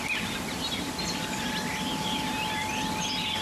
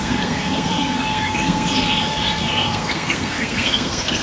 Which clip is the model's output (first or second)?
second